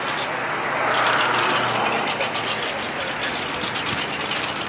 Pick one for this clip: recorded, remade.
recorded